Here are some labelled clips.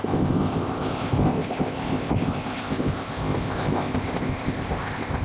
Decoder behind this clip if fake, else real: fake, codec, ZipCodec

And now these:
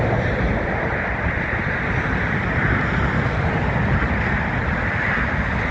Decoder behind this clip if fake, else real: real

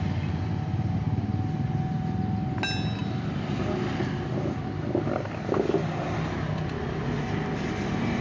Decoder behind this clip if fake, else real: real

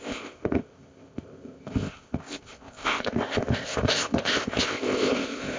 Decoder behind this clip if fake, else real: fake, codec, ZipCodec